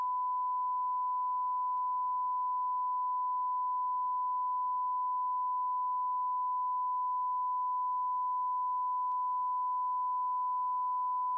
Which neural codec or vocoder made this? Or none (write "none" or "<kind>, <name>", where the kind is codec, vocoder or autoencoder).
none